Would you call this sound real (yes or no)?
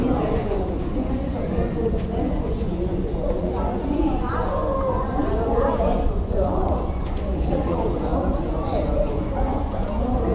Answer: no